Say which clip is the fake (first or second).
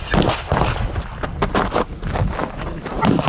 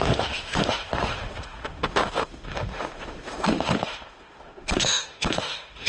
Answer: second